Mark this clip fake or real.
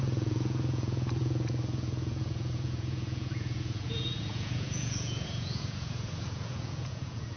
fake